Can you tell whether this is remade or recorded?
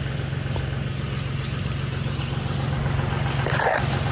recorded